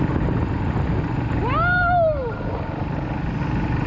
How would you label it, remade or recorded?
recorded